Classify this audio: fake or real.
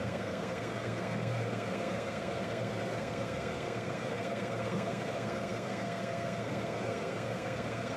fake